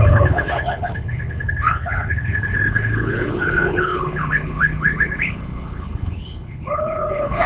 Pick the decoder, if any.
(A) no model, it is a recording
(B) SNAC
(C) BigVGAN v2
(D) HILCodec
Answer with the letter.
D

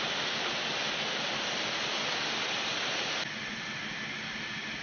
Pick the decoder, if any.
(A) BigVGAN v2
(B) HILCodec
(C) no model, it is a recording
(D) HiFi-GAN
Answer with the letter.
C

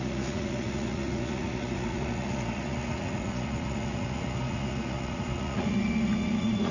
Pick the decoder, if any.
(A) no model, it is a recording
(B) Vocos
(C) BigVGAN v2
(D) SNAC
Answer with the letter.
B